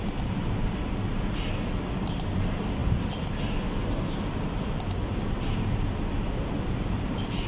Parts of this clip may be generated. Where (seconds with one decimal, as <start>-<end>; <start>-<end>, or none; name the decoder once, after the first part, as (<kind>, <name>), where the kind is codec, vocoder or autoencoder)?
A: none